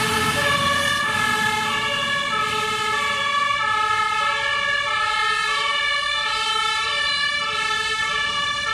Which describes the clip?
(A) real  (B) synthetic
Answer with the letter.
B